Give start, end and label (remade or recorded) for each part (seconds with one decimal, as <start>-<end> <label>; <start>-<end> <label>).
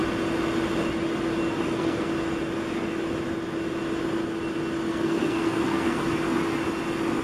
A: 0.0-1.6 recorded; 1.6-2.1 remade; 2.1-4.9 recorded; 4.9-6.0 remade; 6.0-7.2 recorded